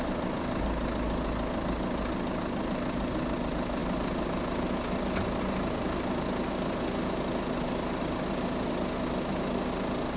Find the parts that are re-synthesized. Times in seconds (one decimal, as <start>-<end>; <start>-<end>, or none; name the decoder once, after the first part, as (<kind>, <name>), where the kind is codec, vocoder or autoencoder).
none

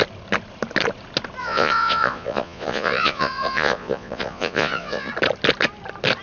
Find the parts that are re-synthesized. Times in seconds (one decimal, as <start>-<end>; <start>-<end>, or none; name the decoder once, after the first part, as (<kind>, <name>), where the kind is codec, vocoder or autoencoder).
1.4-5.1 (vocoder, Vocos)